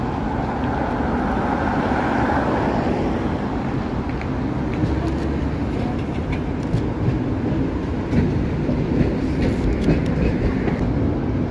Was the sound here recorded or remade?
recorded